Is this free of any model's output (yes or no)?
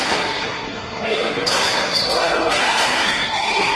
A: no